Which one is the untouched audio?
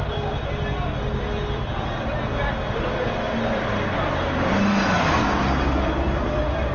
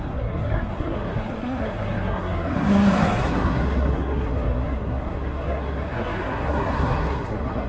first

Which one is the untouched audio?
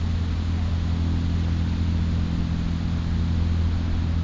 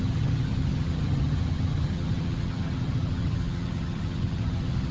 first